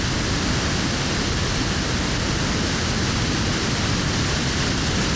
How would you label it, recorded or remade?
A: remade